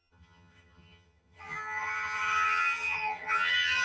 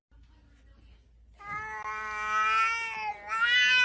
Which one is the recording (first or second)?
second